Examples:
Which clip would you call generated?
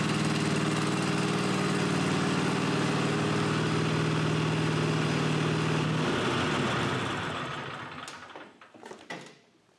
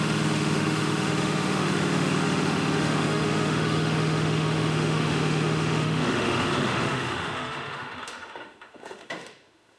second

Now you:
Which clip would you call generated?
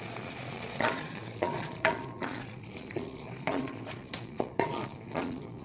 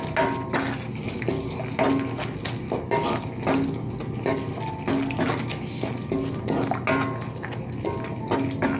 first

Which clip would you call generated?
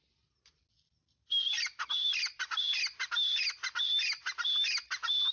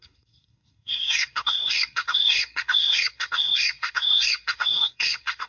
second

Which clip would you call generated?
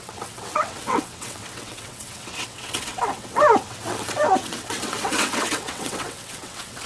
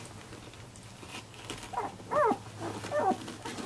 first